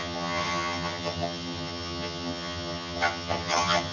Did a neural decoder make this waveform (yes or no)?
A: yes